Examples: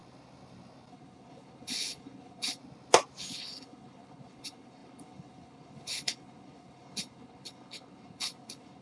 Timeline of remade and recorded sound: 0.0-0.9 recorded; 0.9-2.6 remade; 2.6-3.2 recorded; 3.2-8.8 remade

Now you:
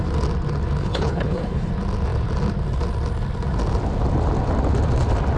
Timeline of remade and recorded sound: 0.0-0.8 recorded; 0.8-1.7 remade; 1.7-5.4 recorded

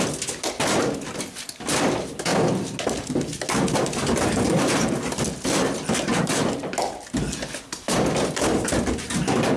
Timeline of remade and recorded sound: 0.0-9.6 recorded

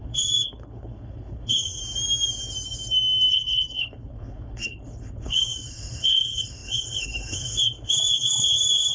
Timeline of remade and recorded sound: 0.0-1.8 remade; 1.8-3.3 recorded; 3.3-8.9 remade

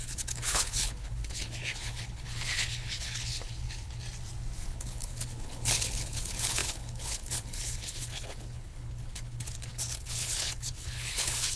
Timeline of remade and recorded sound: 0.0-4.0 remade; 4.0-4.7 recorded; 4.7-11.6 remade